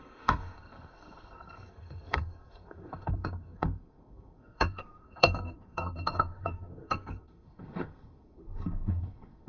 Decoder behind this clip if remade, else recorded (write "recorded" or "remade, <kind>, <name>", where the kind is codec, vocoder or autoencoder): remade, codec, SNAC